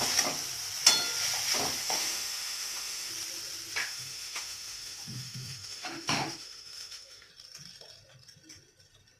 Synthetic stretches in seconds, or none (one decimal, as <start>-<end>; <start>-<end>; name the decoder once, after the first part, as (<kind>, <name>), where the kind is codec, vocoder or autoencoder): 1.8-3.1 (autoencoder, DAC-VAE); 3.8-7.3